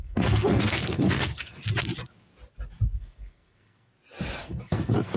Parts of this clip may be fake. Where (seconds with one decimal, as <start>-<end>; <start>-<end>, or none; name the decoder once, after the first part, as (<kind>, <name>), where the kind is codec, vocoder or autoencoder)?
0.0-1.6 (codec, SNAC); 3.0-3.9; 4.4-5.2